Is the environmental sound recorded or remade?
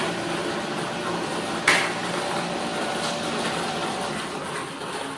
recorded